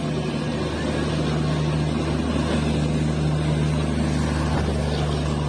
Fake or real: real